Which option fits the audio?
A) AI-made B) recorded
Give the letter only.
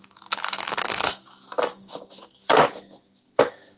A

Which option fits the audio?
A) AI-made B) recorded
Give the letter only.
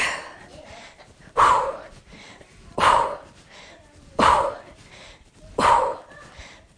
A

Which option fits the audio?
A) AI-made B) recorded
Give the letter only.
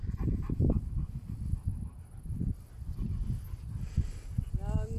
B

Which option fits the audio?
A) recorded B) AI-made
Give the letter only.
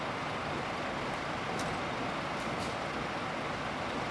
A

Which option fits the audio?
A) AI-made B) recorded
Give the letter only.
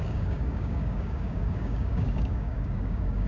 A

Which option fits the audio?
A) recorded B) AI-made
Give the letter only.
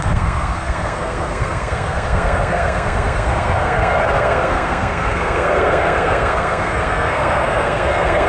B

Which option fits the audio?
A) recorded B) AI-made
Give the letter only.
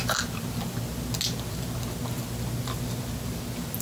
A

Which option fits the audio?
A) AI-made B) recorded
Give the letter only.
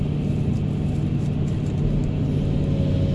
B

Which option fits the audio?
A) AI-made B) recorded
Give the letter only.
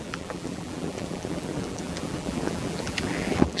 A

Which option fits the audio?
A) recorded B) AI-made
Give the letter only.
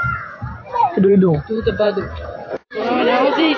B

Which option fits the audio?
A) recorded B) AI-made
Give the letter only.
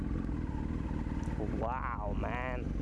A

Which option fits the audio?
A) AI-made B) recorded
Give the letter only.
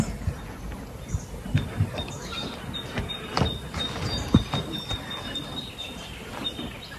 B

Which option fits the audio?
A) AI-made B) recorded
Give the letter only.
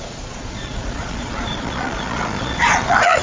A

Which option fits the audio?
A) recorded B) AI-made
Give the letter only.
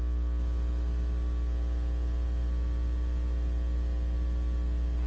A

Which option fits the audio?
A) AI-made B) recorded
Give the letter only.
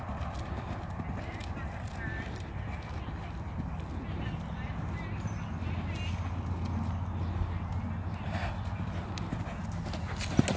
B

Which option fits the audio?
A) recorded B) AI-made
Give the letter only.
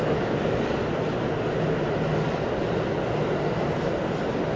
A